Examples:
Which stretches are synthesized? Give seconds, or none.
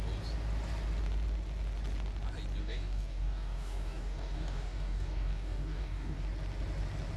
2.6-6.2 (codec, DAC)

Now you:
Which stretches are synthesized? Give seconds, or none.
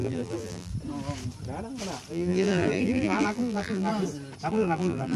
0.0-0.7 (vocoder, BigVGAN v2); 2.1-3.9; 4.5-5.2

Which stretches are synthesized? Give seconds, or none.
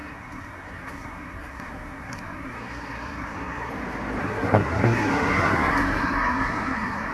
0.0-3.7 (codec, SNAC); 4.2-7.1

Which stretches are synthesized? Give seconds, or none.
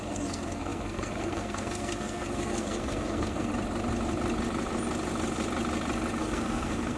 0.0-3.5 (codec, SNAC); 6.2-7.0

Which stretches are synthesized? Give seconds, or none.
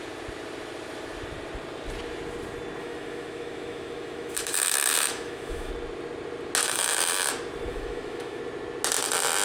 2.8-5.7 (autoencoder, DAC-VAE); 6.6-7.1; 7.7-8.4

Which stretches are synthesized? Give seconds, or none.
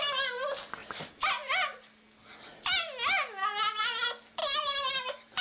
none